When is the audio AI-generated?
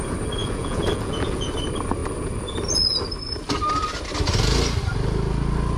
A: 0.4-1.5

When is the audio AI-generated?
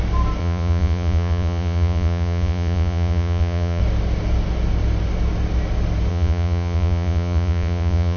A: 0.4-3.8; 6.1-8.2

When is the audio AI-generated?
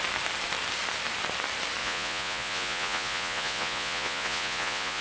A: 1.8-5.0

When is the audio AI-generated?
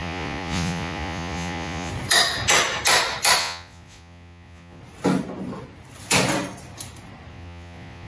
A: 0.0-1.9; 3.4-4.8; 7.3-8.1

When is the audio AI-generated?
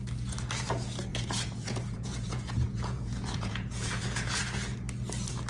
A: 1.1-4.4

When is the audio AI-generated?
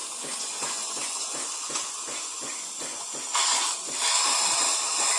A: 0.0-3.1